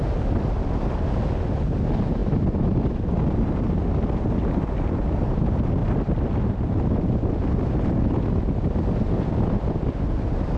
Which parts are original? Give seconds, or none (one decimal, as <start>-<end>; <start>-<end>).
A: 0.0-10.6